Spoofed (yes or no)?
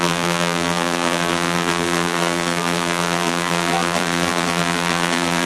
yes